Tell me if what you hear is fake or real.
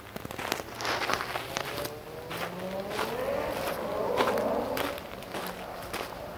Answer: real